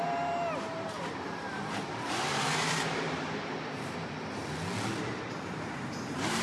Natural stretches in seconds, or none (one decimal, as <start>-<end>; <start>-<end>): 4.4-5.5